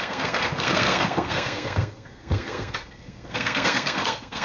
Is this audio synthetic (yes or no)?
yes